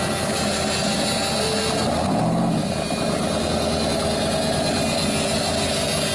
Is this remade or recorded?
recorded